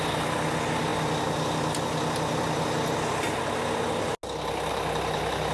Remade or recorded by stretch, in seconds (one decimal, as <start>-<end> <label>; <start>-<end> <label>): 0.0-5.5 recorded